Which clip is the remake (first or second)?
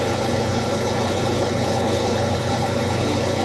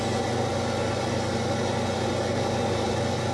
first